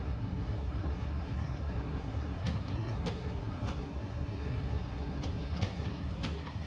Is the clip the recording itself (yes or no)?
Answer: no